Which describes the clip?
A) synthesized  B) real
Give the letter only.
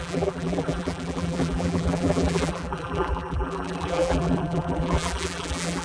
A